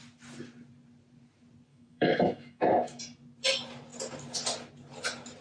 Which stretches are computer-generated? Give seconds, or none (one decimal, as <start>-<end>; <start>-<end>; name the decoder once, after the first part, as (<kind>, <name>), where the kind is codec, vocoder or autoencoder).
1.7-3.0 (autoencoder, DAC-VAE)